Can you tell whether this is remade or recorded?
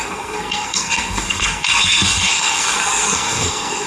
remade